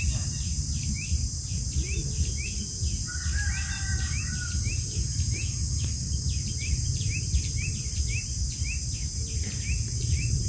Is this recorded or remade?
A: remade